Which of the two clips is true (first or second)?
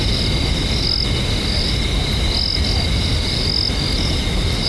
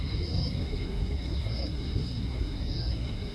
first